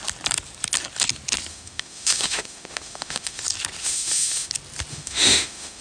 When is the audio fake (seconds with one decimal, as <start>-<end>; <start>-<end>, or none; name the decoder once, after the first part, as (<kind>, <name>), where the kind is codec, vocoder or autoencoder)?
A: 1.5-3.4 (autoencoder, DAC-VAE); 3.8-4.5; 4.9-5.8